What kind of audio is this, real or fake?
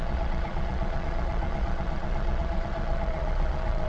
fake